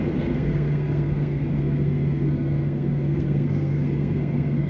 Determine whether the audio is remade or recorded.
remade